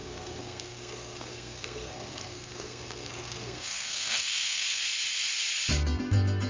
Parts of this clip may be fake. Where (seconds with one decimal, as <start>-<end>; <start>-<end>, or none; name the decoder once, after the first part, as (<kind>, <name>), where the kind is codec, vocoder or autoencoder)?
0.0-4.8 (codec, SNAC); 6.0-6.5